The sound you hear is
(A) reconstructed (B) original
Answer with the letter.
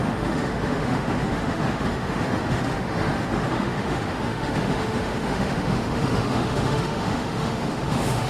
A